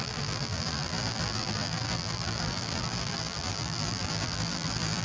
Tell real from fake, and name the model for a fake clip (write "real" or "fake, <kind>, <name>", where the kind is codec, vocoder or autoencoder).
fake, vocoder, BigVGAN v2